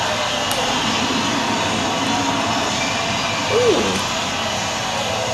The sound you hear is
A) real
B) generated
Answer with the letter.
A